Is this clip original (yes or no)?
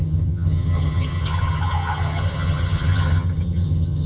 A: no